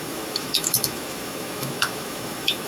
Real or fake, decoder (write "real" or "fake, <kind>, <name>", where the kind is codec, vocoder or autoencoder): fake, autoencoder, DAC-VAE